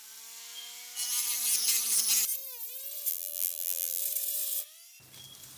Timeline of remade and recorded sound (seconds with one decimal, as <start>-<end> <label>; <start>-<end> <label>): 0.0-3.1 recorded; 3.1-4.0 remade; 4.0-5.6 recorded